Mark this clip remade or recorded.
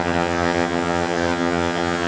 remade